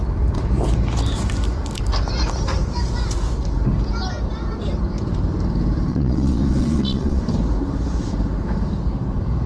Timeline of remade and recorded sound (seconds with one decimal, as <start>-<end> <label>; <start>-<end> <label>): 0.0-5.9 recorded; 5.9-7.2 remade; 7.2-9.5 recorded